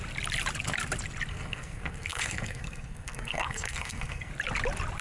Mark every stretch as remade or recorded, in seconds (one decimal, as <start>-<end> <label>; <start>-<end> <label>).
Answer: 0.0-1.3 recorded; 1.3-4.3 remade; 4.3-5.0 recorded